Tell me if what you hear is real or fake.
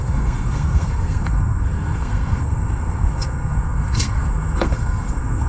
fake